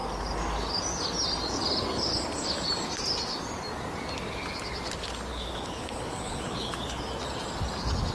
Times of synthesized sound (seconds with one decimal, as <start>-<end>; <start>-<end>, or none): 5.3-7.0